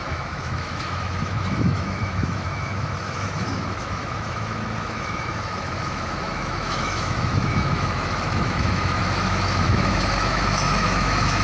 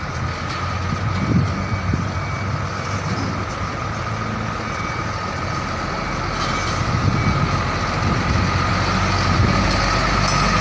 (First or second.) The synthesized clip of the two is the first